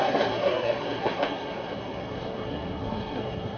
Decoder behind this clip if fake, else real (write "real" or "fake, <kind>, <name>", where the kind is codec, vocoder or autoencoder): fake, codec, SNAC